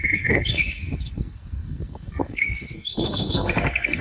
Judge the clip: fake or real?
fake